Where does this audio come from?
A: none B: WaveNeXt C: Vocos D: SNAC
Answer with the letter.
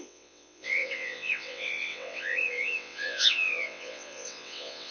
B